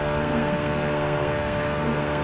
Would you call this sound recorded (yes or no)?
no